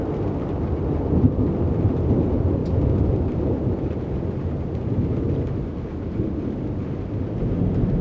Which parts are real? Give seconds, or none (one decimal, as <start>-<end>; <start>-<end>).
0.0-8.0